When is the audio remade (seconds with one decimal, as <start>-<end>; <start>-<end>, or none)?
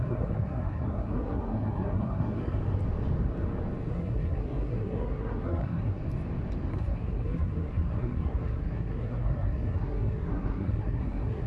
0.0-2.6; 3.9-6.0; 6.7-11.5